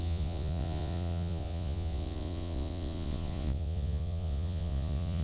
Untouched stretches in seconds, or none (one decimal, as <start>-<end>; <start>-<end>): none